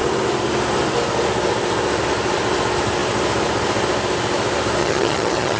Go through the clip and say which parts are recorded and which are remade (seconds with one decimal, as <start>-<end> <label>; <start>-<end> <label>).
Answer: 0.0-4.8 recorded; 4.8-5.6 remade